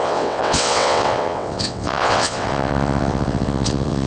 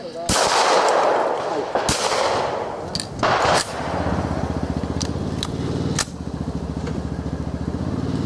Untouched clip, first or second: second